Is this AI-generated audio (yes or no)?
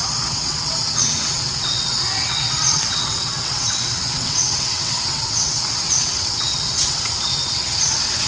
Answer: yes